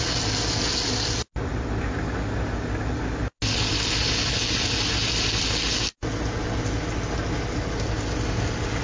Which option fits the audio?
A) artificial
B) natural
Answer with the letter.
B